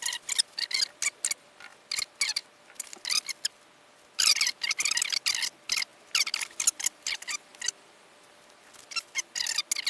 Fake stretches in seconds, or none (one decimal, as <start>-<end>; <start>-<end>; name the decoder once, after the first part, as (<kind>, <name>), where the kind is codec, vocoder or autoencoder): none